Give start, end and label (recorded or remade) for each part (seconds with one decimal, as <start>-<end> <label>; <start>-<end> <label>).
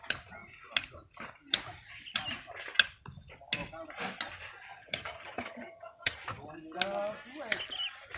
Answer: 0.0-4.7 recorded; 4.7-6.2 remade; 6.2-8.2 recorded